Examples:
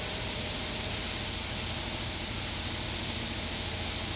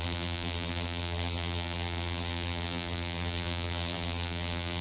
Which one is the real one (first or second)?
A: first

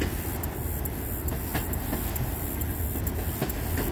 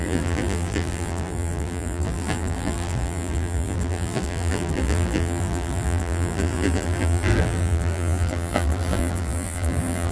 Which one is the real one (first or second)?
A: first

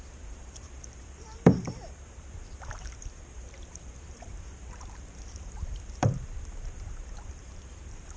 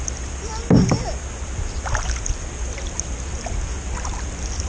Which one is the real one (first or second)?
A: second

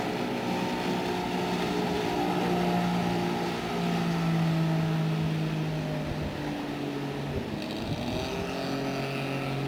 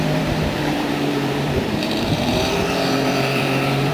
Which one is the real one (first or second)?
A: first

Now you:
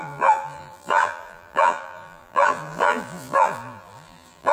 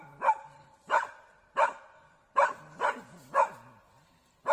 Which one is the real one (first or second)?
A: second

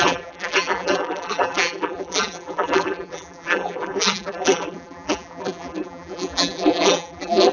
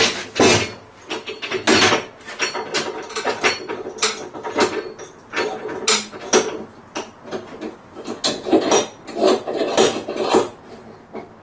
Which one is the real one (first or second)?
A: second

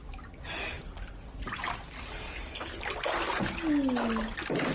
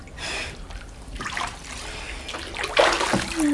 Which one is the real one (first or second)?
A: first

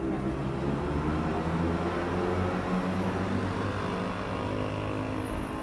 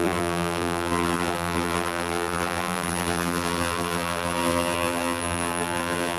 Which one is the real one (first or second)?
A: first